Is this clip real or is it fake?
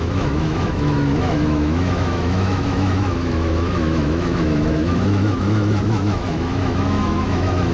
fake